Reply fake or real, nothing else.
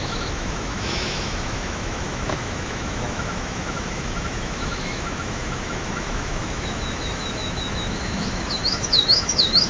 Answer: fake